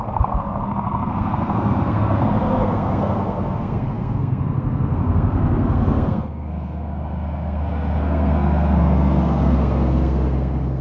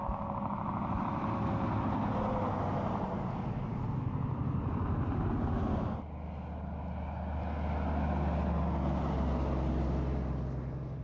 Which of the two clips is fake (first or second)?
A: first